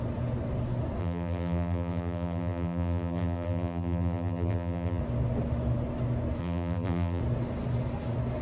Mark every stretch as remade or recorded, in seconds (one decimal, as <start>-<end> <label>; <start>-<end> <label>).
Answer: 0.0-1.0 recorded; 1.0-5.0 remade; 5.0-6.4 recorded; 6.4-7.2 remade; 7.2-8.4 recorded